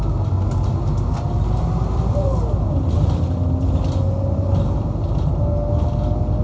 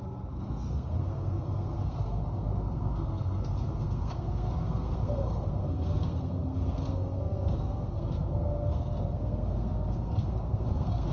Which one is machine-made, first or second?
second